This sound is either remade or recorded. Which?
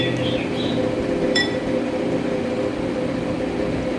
remade